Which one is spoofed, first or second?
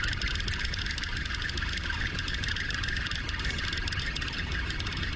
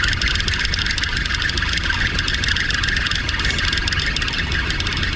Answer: first